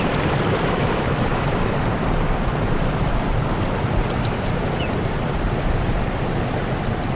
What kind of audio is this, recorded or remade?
remade